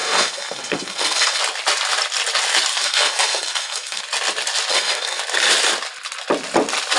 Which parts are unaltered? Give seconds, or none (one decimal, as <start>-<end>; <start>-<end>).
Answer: 1.4-2.7; 4.0-4.7; 5.2-7.0